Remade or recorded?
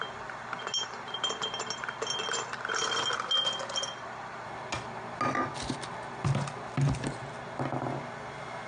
recorded